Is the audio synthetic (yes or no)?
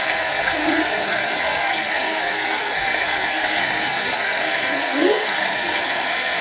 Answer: yes